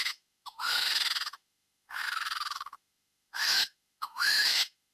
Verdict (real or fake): fake